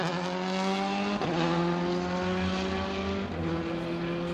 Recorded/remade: recorded